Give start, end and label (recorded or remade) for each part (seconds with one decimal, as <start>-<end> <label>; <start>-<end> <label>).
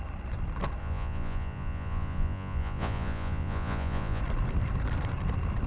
0.0-0.8 recorded; 0.8-4.2 remade; 4.2-5.7 recorded